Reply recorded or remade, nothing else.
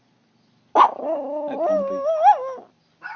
recorded